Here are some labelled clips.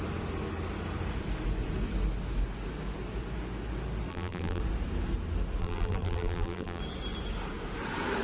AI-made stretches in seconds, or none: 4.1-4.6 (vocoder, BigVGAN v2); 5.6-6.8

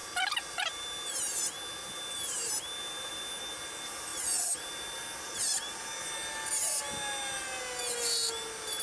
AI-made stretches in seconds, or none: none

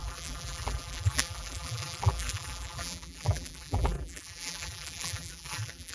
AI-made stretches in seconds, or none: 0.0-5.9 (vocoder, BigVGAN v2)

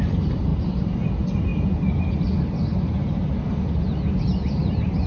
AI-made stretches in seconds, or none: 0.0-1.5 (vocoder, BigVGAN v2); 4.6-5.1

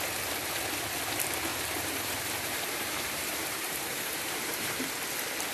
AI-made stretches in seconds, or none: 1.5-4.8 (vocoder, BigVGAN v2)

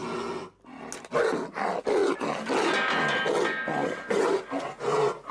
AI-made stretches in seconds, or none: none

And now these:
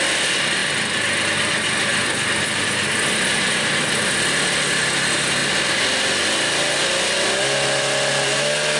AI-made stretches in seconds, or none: none